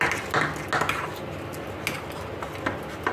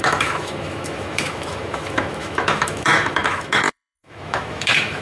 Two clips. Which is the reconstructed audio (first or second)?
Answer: second